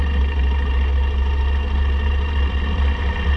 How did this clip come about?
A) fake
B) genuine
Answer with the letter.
B